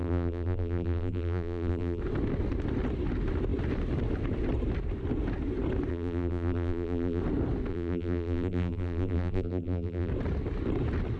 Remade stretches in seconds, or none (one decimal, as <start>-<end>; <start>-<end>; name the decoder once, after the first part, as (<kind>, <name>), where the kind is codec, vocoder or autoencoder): 0.0-2.0 (vocoder, BigVGAN v2); 5.9-7.2; 7.7-10.1